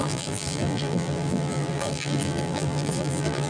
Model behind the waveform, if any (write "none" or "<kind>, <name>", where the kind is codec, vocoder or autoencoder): vocoder, BigVGAN v2